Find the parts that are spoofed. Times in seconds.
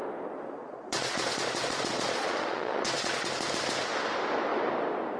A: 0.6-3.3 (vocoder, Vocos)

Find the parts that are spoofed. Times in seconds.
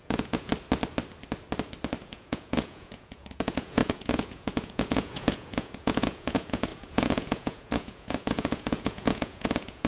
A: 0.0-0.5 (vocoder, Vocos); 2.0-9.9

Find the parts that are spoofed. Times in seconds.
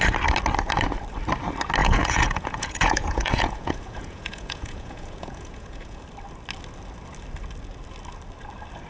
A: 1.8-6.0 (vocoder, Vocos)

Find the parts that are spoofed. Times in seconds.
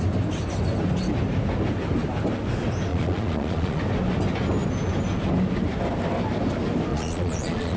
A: 2.9-3.8 (vocoder, Vocos); 6.9-7.8